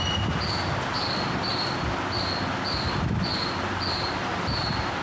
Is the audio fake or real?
real